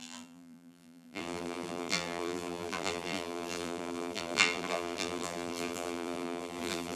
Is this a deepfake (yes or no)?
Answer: yes